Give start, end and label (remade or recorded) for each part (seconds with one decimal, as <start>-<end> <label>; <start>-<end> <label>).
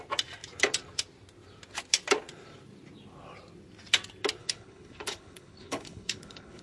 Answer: 0.0-4.4 recorded; 4.4-6.6 remade